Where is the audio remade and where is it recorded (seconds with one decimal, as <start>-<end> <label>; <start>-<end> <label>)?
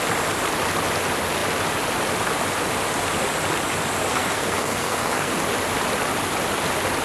0.0-4.1 recorded; 4.1-5.3 remade; 5.3-7.0 recorded